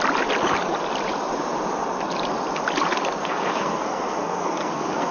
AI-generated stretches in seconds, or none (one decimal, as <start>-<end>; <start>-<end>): 3.2-5.1